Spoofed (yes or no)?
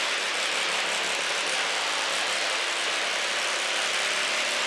no